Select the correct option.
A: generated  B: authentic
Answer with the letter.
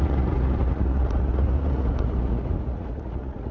A